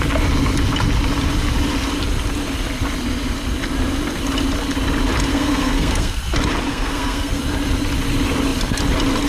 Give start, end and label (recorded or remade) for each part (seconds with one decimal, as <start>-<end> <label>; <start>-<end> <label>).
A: 0.0-5.3 recorded; 5.3-6.2 remade; 6.2-6.7 recorded; 6.7-7.4 remade; 7.4-9.3 recorded